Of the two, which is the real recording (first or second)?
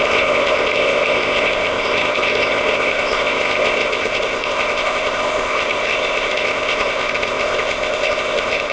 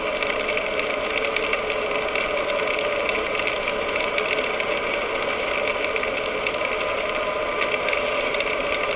second